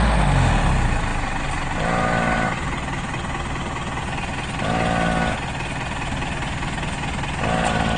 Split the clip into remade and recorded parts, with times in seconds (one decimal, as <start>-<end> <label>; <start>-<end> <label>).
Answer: 0.0-8.0 recorded

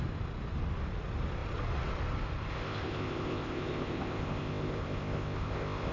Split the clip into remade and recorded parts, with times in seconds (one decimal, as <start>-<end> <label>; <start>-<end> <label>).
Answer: 0.0-2.5 recorded; 2.5-5.9 remade

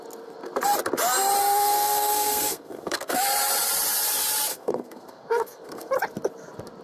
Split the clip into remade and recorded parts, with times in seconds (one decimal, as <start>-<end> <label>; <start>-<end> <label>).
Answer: 0.0-1.4 recorded; 1.4-3.2 remade; 3.2-4.5 recorded; 4.5-5.9 remade; 5.9-6.8 recorded

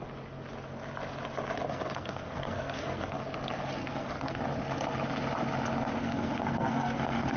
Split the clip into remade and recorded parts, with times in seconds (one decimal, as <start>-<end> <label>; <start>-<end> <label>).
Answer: 0.0-1.7 recorded; 1.7-3.2 remade; 3.2-3.8 recorded; 3.8-4.4 remade; 4.4-6.0 recorded; 6.0-7.4 remade

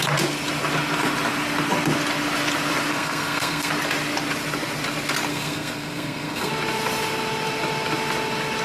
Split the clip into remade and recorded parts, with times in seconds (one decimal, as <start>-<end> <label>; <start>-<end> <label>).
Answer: 0.0-2.9 recorded; 2.9-3.7 remade; 3.7-5.3 recorded; 5.3-6.5 remade; 6.5-8.6 recorded

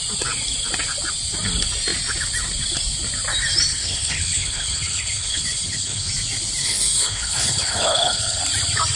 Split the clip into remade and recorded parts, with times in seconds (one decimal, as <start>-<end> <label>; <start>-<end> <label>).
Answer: 0.0-3.7 recorded; 3.7-6.1 remade; 6.1-6.6 recorded; 6.6-8.4 remade; 8.4-9.0 recorded